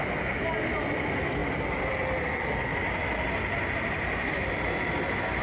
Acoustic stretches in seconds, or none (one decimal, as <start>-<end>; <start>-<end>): 0.0-5.4